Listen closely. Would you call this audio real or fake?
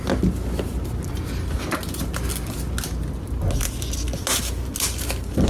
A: real